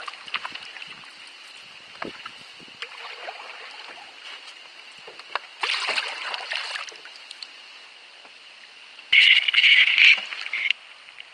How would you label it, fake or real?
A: real